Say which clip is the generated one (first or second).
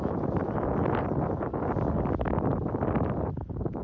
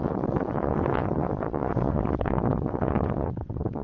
second